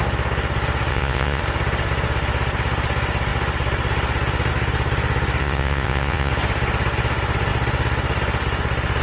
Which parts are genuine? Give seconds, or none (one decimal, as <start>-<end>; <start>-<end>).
0.0-0.9; 1.4-5.4; 6.3-9.0